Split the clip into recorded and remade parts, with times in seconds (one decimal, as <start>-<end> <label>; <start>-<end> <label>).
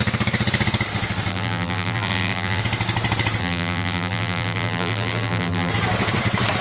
0.0-1.3 recorded; 1.3-2.6 remade; 2.6-3.4 recorded; 3.4-5.7 remade; 5.7-6.6 recorded